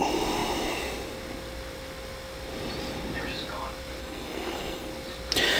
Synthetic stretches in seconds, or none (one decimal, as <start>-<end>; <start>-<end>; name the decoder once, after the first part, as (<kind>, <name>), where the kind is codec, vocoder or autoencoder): 4.0-4.9 (codec, SNAC)